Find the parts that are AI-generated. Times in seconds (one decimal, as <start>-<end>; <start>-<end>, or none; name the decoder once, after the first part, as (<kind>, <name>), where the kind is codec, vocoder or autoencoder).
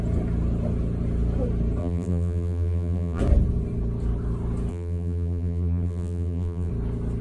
1.8-3.2 (vocoder, BigVGAN v2); 4.7-6.7